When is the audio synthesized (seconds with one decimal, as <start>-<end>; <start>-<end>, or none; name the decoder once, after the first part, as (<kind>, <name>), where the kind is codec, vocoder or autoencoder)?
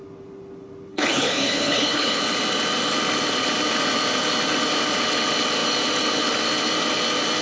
0.9-2.2 (codec, HILCodec)